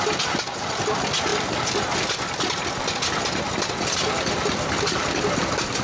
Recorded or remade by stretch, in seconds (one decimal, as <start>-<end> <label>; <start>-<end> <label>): 0.0-5.8 recorded